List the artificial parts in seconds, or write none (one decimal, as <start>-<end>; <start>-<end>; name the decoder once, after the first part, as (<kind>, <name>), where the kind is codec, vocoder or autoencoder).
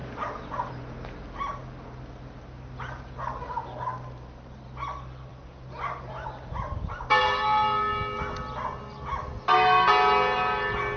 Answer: none